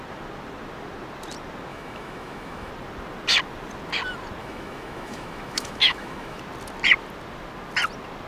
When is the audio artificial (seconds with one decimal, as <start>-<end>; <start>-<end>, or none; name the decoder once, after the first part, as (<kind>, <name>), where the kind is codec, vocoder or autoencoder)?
1.7-2.7 (autoencoder, DAC-VAE); 4.4-6.4